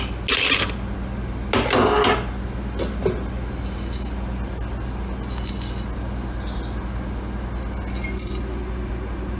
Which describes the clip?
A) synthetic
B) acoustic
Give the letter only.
B